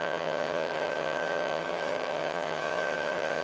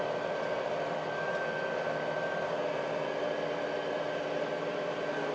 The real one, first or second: second